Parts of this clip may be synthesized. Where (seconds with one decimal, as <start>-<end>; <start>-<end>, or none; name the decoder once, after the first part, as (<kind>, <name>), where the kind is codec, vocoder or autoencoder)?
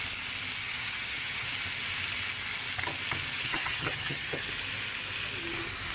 0.6-1.5 (vocoder, HiFi-GAN); 3.3-4.4